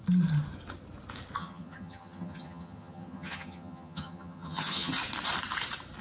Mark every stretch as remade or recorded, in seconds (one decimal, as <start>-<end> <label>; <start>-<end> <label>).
0.0-1.4 recorded; 1.4-4.9 remade; 4.9-6.0 recorded